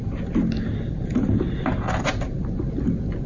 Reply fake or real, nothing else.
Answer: real